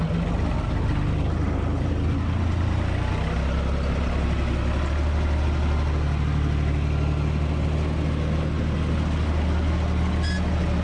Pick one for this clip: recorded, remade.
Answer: recorded